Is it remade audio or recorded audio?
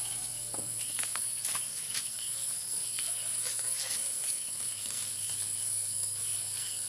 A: remade